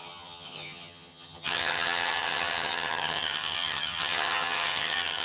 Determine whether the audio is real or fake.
fake